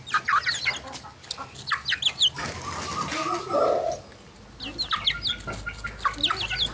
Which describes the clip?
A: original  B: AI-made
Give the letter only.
A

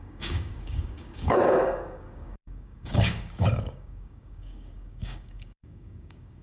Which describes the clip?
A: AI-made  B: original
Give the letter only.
A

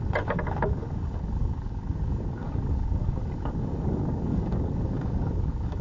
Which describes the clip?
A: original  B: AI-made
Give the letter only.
B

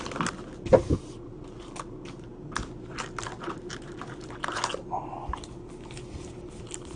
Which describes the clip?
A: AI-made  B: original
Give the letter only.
B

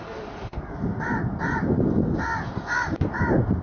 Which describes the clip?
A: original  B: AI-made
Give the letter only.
A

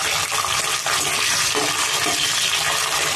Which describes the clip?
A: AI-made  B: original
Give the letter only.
B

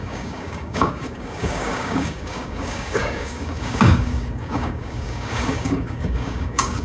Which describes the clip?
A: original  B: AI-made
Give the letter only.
B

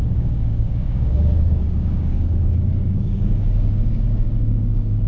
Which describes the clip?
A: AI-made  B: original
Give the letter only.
A